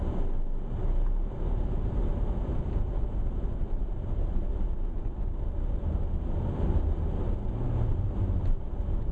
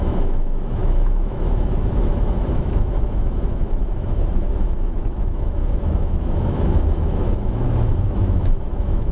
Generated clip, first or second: second